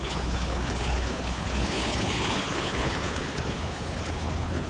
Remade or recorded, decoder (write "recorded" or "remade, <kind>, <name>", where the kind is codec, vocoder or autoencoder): remade, codec, HILCodec